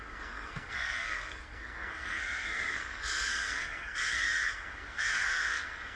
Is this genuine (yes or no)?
no